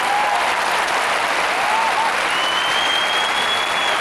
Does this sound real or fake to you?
real